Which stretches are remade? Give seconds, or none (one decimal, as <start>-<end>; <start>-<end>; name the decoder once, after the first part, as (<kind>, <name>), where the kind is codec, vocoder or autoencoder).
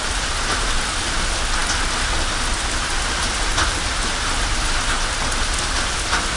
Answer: none